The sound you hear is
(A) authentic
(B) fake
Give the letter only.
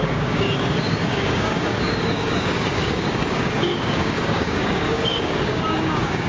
B